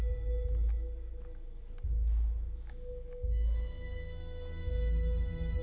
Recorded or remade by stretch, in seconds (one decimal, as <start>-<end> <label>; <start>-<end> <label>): 0.0-5.6 recorded

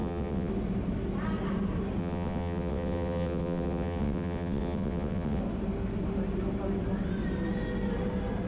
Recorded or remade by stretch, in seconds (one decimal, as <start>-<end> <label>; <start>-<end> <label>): 0.0-0.5 remade; 0.5-2.0 recorded; 2.0-5.4 remade; 5.4-8.5 recorded

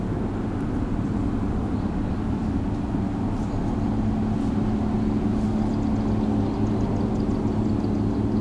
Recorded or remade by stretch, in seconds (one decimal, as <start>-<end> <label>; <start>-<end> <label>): 0.0-8.4 recorded

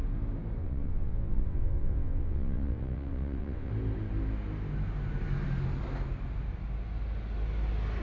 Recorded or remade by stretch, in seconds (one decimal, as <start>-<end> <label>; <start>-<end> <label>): 0.0-0.6 recorded; 0.6-3.7 remade; 3.7-8.0 recorded